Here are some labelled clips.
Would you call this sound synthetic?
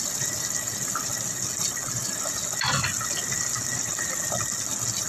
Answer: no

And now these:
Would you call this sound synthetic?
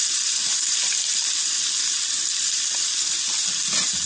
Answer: no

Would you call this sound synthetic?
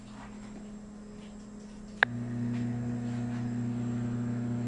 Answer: no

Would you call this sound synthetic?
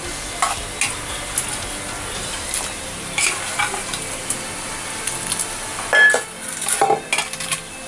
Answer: no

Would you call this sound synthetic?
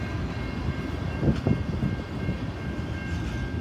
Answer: no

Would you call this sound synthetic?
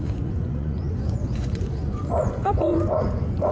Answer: yes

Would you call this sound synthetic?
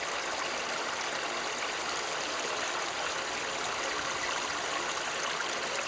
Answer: no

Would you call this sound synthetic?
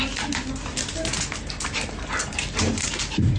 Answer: no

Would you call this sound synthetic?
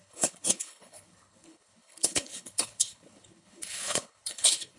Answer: yes